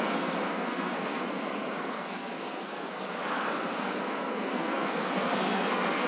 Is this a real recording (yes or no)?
no